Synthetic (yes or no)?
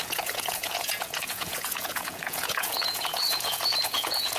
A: yes